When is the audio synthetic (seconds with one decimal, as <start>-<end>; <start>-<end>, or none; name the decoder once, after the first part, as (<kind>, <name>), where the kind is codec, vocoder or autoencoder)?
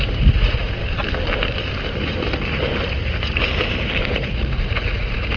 0.0-0.8 (vocoder, Vocos); 4.0-5.4